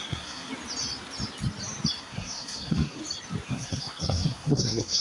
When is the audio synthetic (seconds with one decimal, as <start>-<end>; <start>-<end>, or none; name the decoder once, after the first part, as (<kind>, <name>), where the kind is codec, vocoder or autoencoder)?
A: 0.0-0.5 (codec, SNAC); 2.0-3.0; 3.5-5.0